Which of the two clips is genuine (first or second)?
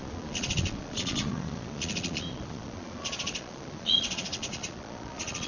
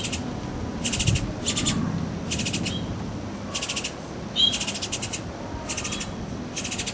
second